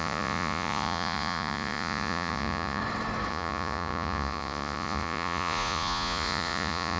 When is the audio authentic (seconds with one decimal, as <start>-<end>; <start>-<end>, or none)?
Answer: 2.8-3.3